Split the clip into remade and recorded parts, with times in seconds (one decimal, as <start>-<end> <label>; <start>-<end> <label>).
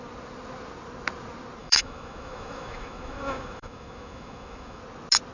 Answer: 0.0-1.6 recorded; 1.6-4.8 remade; 4.8-5.3 recorded